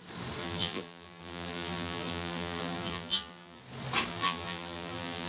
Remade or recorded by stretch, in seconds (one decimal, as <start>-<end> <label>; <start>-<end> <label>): 0.0-0.4 recorded; 0.4-3.6 remade; 3.6-4.1 recorded; 4.1-5.3 remade